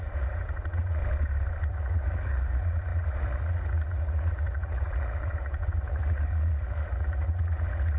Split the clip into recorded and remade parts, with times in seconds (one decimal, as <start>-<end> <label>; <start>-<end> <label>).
0.0-1.0 remade; 1.0-1.7 recorded; 1.7-8.0 remade